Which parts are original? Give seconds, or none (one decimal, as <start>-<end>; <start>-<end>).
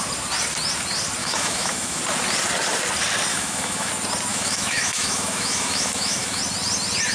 0.0-1.2; 2.0-3.3; 3.9-4.3; 6.4-7.1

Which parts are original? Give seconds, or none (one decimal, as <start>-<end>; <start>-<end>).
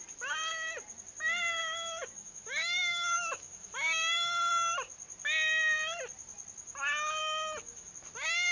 0.0-1.6; 4.5-7.2; 7.9-8.5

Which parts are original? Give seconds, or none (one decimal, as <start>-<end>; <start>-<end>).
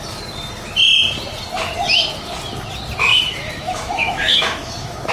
0.0-3.1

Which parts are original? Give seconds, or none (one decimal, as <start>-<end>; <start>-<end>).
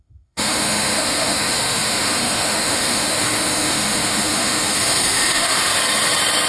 5.7-6.5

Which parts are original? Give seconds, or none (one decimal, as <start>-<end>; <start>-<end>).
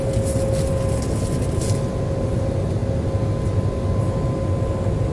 0.0-5.1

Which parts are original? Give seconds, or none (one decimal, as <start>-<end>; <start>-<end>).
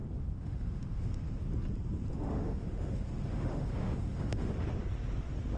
1.4-2.1; 4.5-5.6